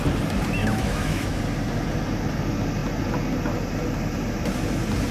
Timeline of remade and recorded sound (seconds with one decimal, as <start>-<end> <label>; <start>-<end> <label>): 0.0-0.6 recorded; 0.6-1.4 remade; 1.4-5.1 recorded